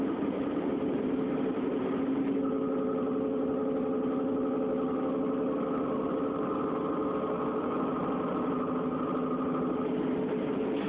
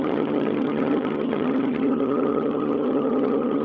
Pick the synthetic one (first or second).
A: second